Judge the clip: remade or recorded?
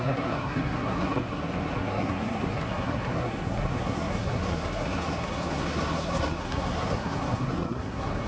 remade